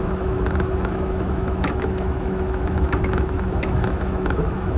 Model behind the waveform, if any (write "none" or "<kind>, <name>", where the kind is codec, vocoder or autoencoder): autoencoder, DAC-VAE